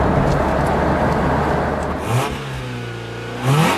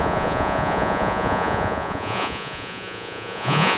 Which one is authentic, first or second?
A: first